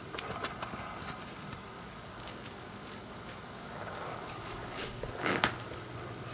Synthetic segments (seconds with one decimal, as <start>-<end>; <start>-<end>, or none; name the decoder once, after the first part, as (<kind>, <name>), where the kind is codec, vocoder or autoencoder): 1.7-5.5 (codec, DAC)